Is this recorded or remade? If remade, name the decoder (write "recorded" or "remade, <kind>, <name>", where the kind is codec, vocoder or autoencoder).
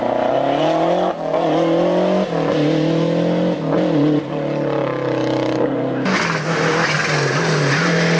recorded